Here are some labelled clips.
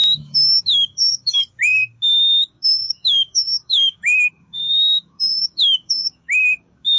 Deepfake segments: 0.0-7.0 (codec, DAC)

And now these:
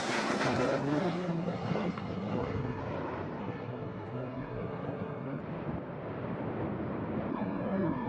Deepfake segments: 0.0-2.8 (codec, SNAC); 3.4-5.4; 7.3-8.1

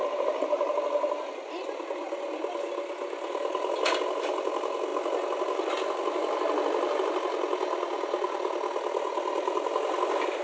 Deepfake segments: none

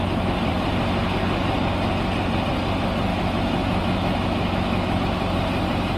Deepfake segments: 3.1-5.0 (autoencoder, DAC-VAE)

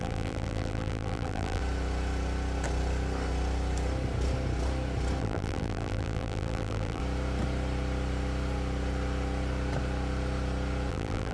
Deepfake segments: 0.0-1.6 (vocoder, BigVGAN v2); 5.2-7.0; 10.9-11.3